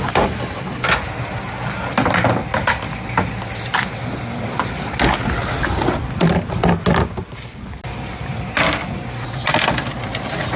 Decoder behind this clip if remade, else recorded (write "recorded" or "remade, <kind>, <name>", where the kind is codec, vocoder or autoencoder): recorded